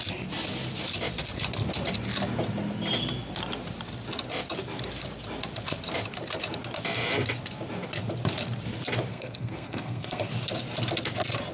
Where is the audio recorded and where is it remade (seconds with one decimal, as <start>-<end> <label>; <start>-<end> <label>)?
0.0-9.1 recorded; 9.1-10.3 remade; 10.3-11.5 recorded